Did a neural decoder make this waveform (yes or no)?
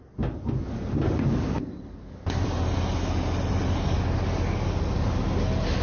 no